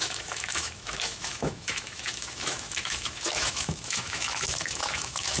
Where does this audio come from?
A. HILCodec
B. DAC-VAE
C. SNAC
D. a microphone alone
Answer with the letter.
B